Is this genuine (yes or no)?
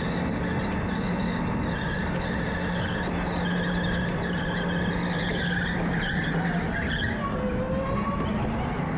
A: yes